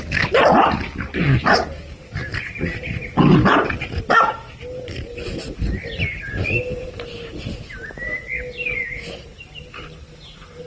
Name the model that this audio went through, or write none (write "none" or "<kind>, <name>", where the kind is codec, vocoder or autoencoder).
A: none